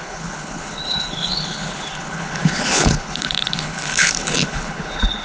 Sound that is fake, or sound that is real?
fake